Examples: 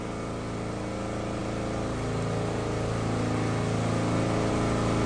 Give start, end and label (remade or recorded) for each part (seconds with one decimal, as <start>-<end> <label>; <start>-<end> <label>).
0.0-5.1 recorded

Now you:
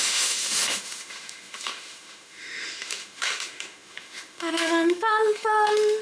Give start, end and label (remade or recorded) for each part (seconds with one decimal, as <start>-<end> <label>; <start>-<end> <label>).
0.0-6.0 remade

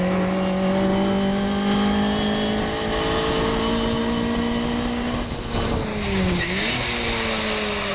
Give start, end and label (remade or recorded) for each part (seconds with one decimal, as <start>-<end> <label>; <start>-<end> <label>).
0.0-5.9 recorded; 5.9-6.8 remade; 6.8-7.9 recorded

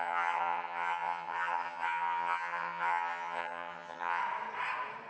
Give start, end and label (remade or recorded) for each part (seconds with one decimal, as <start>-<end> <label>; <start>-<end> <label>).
0.0-4.2 remade; 4.2-5.1 recorded

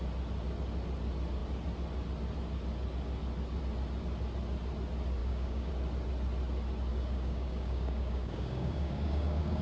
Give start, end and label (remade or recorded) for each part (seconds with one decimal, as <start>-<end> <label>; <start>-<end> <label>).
0.0-5.2 recorded; 5.2-5.7 remade; 5.7-6.9 recorded; 6.9-9.6 remade